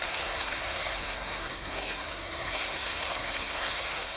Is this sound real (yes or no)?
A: no